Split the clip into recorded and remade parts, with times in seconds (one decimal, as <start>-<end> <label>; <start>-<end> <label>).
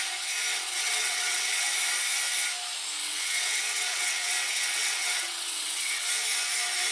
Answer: 0.0-0.5 recorded; 0.5-1.7 remade; 1.7-3.0 recorded; 3.0-6.1 remade; 6.1-6.9 recorded